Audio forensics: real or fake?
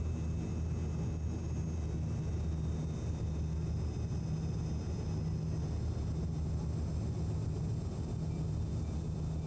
real